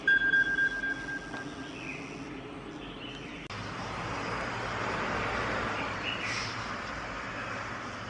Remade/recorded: recorded